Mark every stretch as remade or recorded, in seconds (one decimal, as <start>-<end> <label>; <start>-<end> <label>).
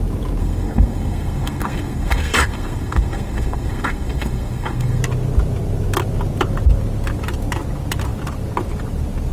0.0-0.4 recorded; 0.4-5.0 remade; 5.0-9.3 recorded